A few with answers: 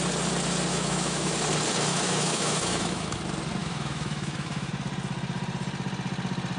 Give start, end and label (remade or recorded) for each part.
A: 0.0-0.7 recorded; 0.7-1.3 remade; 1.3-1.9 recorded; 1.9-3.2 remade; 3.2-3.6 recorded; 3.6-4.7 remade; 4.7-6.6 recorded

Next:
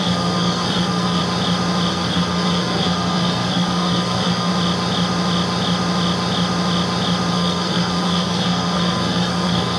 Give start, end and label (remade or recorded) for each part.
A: 0.0-1.2 remade; 1.2-1.9 recorded; 1.9-4.5 remade; 4.5-7.3 recorded; 7.3-9.8 remade